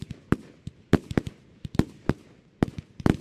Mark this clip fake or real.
real